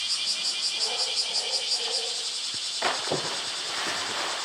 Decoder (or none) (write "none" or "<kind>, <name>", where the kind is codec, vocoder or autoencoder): none